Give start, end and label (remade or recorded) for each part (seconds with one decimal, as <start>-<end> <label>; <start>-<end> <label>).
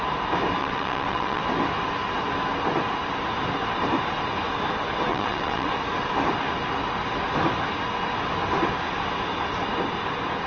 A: 0.0-0.6 recorded; 0.6-1.4 remade; 1.4-5.1 recorded; 5.1-5.7 remade; 5.7-10.5 recorded